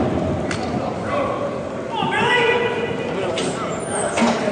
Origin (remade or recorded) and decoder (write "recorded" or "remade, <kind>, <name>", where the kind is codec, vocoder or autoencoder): remade, vocoder, BigVGAN v2